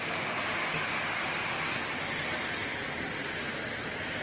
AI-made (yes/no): no